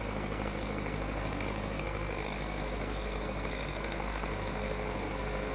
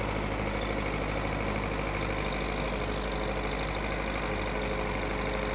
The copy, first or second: first